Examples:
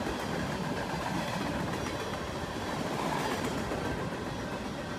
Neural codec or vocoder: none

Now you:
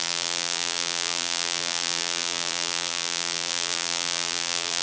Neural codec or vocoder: vocoder, BigVGAN v2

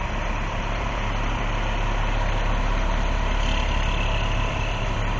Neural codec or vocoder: vocoder, BigVGAN v2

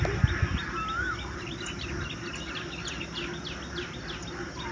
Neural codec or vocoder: vocoder, BigVGAN v2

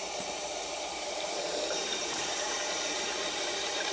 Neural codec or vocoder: vocoder, BigVGAN v2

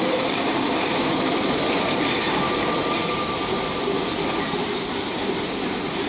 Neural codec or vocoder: vocoder, BigVGAN v2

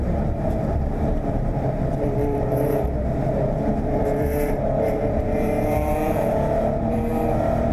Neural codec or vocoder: vocoder, BigVGAN v2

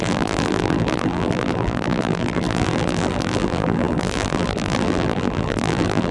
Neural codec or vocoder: vocoder, BigVGAN v2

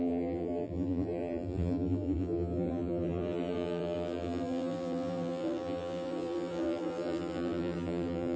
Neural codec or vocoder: vocoder, BigVGAN v2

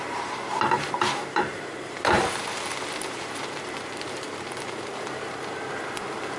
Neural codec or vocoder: vocoder, BigVGAN v2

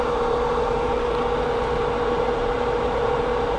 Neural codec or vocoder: vocoder, BigVGAN v2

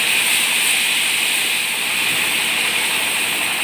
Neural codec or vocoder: none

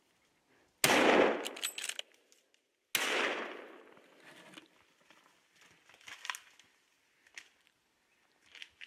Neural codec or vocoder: none